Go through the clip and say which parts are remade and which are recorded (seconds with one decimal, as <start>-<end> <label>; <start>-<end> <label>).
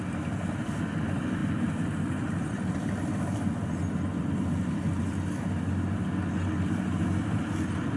0.0-8.0 recorded